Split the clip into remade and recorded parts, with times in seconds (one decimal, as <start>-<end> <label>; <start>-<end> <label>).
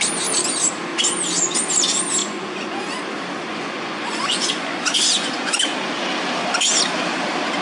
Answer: 0.0-2.2 recorded; 2.2-3.0 remade; 3.0-3.5 recorded; 3.5-5.6 remade; 5.6-7.6 recorded